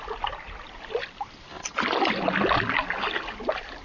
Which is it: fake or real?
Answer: real